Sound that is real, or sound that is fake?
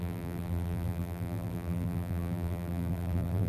fake